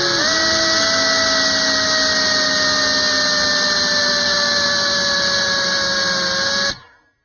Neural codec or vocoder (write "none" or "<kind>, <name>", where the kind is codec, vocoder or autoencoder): none